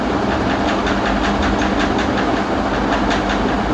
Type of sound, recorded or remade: recorded